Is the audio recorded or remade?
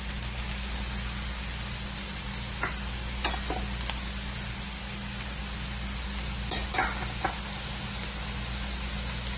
recorded